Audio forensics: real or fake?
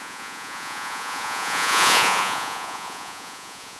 fake